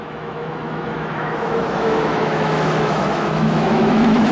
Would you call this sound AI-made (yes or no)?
yes